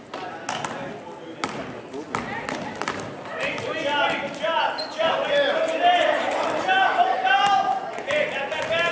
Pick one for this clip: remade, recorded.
recorded